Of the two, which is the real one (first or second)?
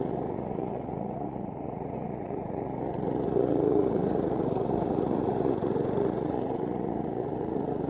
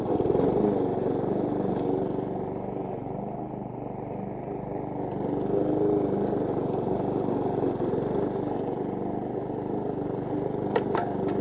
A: second